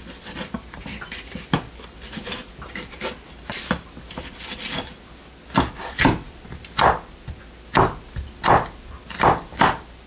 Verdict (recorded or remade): recorded